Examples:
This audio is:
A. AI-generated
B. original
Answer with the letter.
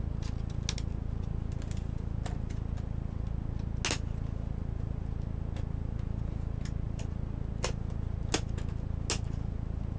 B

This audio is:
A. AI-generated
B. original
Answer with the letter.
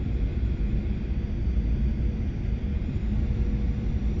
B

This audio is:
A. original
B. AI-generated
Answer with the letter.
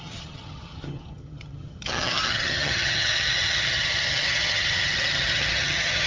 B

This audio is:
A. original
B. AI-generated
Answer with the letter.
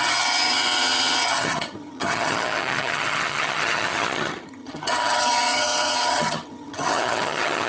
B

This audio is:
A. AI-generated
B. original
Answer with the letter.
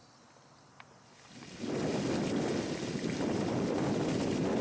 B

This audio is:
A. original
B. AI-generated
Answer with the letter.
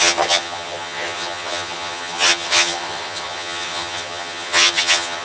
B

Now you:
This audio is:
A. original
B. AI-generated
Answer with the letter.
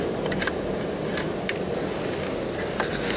A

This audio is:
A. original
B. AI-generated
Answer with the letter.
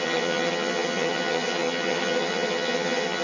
B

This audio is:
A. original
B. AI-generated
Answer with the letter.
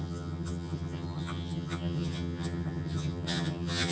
B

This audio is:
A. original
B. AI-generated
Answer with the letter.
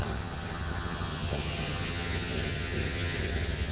B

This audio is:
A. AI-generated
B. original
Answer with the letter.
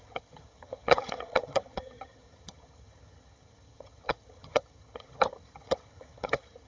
A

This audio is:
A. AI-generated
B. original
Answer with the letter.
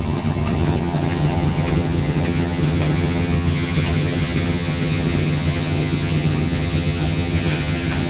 A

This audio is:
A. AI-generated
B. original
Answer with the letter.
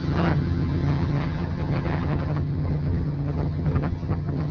A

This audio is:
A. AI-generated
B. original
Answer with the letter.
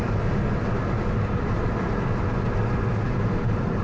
B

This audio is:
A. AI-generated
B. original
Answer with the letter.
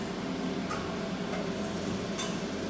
B